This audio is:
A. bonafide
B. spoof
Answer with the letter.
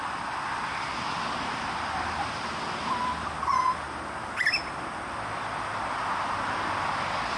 A